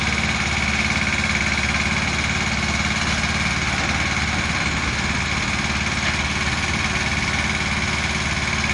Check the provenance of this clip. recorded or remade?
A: recorded